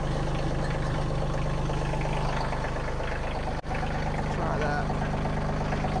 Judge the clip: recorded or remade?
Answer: recorded